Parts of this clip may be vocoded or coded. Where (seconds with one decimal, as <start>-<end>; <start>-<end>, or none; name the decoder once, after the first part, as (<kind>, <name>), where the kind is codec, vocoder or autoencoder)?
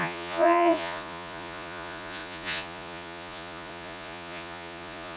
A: 0.0-5.2 (vocoder, Vocos)